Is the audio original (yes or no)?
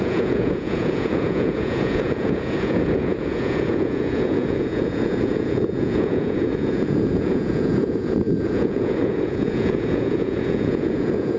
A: no